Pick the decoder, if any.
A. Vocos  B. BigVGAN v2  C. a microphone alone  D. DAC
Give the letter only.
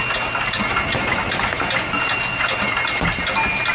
C